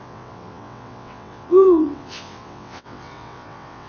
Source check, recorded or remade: remade